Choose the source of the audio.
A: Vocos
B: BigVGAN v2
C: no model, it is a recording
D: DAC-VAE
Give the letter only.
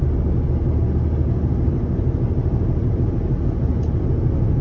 C